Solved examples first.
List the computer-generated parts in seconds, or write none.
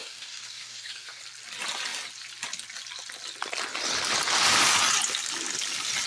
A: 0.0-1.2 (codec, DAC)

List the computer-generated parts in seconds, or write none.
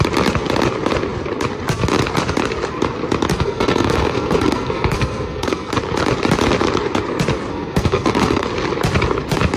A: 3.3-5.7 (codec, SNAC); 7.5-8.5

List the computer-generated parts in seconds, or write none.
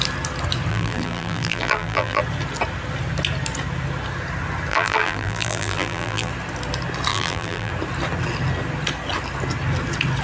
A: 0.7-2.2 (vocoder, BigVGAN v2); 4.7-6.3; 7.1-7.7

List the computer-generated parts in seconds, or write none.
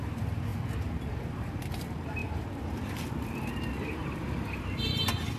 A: 0.0-0.5 (vocoder, BigVGAN v2); 1.2-5.4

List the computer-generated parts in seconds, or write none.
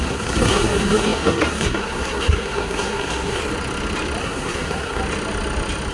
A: 0.0-3.4 (codec, SNAC); 4.2-5.0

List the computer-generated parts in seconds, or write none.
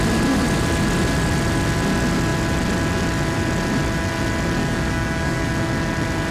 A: 4.6-5.5 (codec, DAC)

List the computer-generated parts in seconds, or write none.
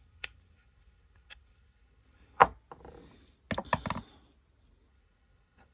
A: 0.0-2.4 (codec, HILCodec); 4.9-5.7